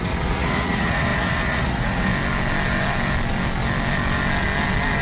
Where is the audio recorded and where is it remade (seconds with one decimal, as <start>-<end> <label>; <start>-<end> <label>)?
0.0-2.1 remade; 2.1-5.0 recorded